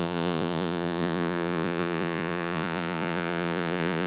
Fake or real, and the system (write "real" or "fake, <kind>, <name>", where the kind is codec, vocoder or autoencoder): fake, vocoder, Vocos